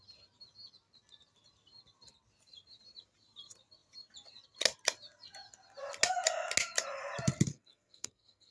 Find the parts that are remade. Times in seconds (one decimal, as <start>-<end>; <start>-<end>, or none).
7.5-8.5